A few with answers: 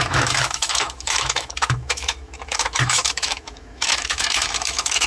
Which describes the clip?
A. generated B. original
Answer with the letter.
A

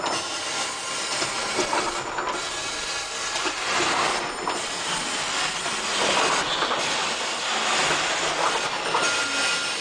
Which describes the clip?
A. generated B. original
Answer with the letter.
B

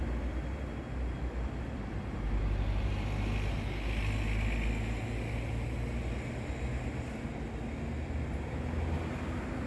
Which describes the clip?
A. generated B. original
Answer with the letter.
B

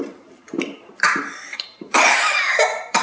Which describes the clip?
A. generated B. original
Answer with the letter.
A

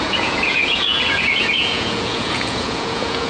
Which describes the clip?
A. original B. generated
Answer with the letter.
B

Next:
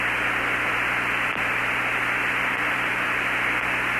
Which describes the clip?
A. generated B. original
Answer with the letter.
B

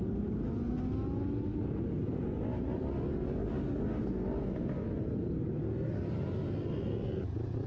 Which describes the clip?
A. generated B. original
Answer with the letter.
B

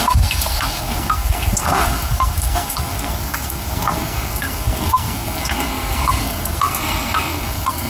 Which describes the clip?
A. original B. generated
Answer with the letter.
B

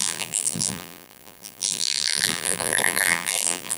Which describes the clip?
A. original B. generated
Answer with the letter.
B